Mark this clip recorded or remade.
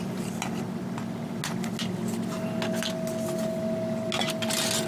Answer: recorded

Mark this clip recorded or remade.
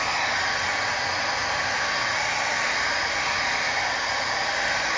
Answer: recorded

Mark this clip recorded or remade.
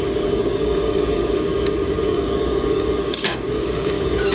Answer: remade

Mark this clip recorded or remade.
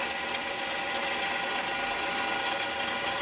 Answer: recorded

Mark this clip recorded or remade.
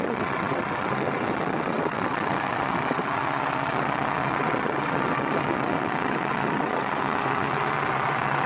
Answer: remade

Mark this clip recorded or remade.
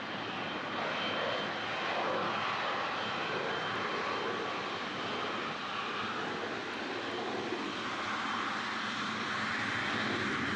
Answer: recorded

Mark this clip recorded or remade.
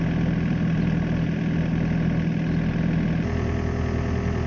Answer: recorded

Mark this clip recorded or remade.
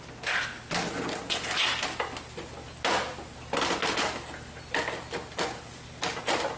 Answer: recorded